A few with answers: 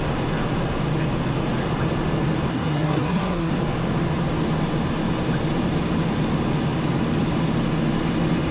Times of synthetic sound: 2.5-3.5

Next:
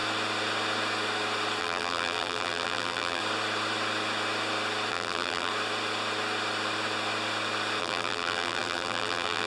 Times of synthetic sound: 1.6-3.2; 4.9-5.5; 7.8-9.5

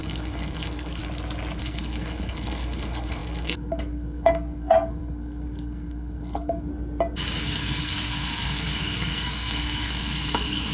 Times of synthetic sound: 0.0-1.0; 1.6-6.7; 7.4-10.7

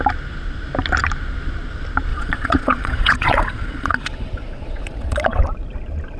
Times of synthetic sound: 2.1-5.4